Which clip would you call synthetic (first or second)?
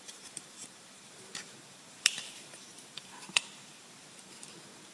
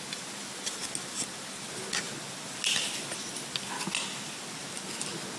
first